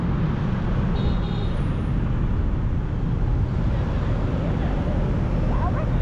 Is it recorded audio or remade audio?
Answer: recorded